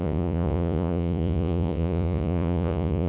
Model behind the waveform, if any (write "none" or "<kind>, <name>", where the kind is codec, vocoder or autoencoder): vocoder, Vocos